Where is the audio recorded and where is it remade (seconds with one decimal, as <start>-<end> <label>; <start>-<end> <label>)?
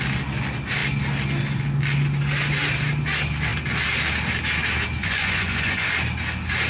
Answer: 0.0-5.0 recorded; 5.0-5.9 remade; 5.9-6.7 recorded